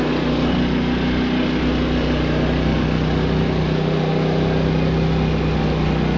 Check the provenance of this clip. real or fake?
real